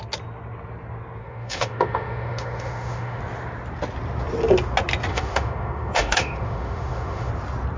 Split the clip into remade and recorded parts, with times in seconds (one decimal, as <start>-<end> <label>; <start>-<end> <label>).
0.0-1.2 recorded; 1.2-3.2 remade; 3.2-5.1 recorded; 5.1-7.3 remade; 7.3-7.8 recorded